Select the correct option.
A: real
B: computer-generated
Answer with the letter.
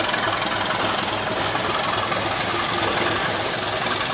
A